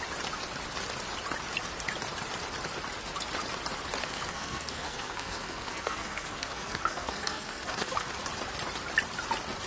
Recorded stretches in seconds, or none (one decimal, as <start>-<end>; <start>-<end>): 0.0-4.0; 8.1-9.7